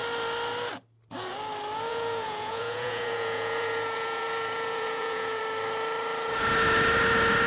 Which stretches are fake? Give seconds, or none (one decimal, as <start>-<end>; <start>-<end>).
1.9-5.4